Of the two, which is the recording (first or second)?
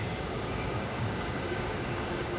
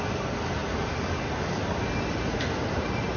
second